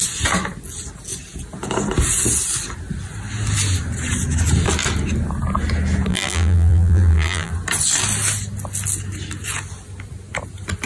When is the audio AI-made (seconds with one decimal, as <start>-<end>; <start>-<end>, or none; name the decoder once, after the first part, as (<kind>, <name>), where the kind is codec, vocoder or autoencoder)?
6.1-7.5 (vocoder, BigVGAN v2)